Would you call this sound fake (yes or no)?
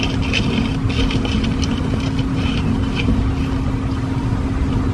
no